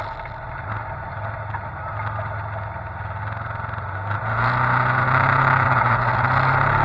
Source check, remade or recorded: recorded